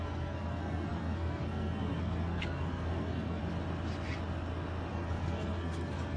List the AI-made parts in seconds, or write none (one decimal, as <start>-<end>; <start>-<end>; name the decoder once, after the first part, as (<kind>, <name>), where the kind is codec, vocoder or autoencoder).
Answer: 0.0-3.4 (codec, SNAC); 4.9-6.2

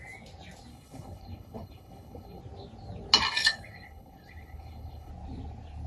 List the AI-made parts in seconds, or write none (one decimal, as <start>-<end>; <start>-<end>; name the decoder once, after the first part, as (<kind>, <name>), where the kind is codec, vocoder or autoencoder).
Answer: 0.7-2.4 (codec, HILCodec); 3.4-5.1

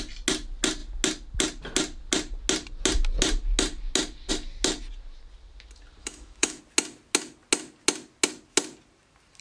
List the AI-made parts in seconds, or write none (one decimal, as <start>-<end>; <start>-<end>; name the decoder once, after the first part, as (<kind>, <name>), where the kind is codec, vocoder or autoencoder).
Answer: 6.0-6.6 (autoencoder, DAC-VAE)

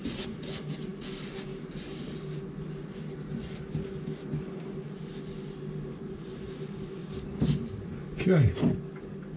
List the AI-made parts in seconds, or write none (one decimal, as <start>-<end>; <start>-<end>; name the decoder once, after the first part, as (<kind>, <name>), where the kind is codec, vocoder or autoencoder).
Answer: none

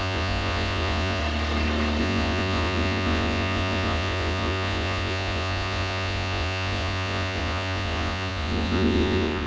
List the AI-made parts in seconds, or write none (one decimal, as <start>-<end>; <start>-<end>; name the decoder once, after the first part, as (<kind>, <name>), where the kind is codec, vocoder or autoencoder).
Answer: 0.0-1.2 (vocoder, Vocos); 2.0-9.5

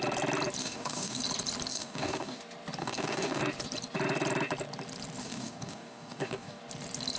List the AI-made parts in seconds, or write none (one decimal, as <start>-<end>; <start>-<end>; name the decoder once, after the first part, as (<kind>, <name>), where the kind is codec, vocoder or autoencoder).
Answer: 0.6-1.2 (codec, DAC); 1.7-2.4; 2.8-3.4; 5.2-6.6